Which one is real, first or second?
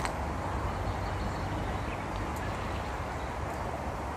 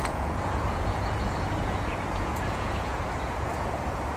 first